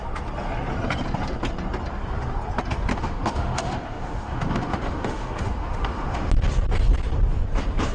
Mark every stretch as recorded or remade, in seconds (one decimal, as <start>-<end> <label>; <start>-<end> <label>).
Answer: 0.0-2.9 recorded; 2.9-6.3 remade; 6.3-7.9 recorded